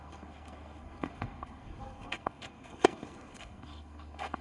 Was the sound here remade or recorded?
remade